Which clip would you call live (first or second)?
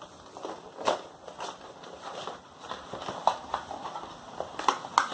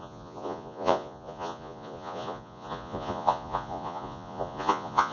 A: first